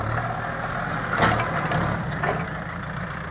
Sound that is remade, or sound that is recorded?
recorded